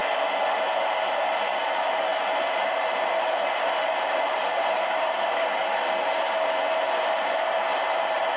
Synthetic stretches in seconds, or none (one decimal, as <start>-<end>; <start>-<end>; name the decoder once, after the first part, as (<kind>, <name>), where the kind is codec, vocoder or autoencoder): 1.6-5.6 (vocoder, BigVGAN v2); 7.0-8.4

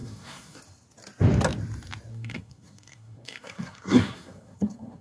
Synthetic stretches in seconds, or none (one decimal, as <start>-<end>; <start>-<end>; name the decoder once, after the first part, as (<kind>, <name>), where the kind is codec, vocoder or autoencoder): 0.0-0.6 (codec, SNAC); 2.1-5.0

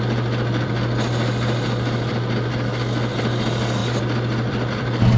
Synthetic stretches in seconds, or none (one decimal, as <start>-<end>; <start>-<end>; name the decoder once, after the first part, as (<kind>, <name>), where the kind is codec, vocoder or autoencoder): none

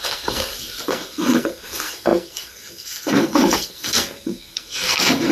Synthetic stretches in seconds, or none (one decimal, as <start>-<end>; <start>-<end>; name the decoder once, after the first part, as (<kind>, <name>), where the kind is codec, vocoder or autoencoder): 0.0-5.3 (codec, SNAC)

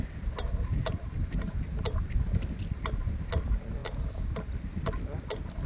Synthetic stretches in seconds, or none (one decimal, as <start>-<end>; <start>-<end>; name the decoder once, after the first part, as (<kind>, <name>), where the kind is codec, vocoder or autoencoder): 3.8-4.9 (vocoder, BigVGAN v2)

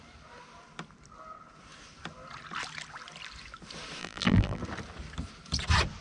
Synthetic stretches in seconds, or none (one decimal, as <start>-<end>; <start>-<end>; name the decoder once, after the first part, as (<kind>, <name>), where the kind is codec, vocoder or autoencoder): 4.0-4.6 (vocoder, BigVGAN v2)

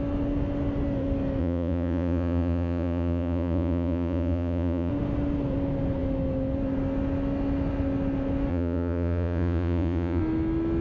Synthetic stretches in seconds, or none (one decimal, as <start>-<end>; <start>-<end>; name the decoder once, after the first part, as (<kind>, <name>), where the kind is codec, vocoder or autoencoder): 1.4-4.9 (vocoder, Vocos); 8.5-10.2

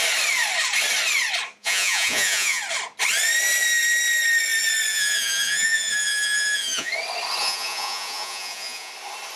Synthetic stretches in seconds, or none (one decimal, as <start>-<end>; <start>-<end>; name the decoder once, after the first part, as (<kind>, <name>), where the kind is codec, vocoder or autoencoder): 1.6-2.6 (vocoder, Vocos); 4.9-6.9; 7.4-8.9